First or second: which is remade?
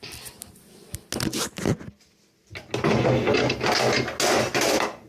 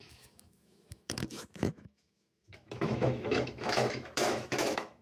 second